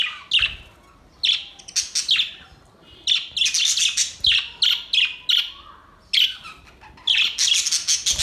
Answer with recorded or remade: recorded